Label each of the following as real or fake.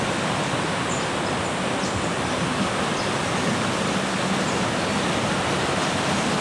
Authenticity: real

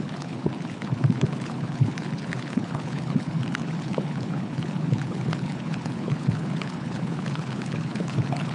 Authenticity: fake